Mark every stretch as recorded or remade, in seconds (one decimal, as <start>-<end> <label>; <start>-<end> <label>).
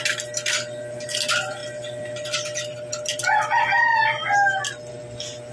0.0-5.5 recorded